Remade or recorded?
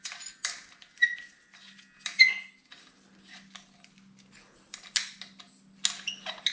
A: recorded